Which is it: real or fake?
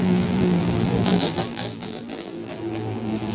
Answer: fake